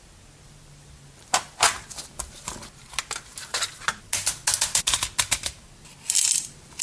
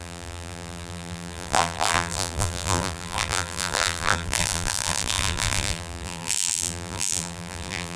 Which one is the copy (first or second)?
second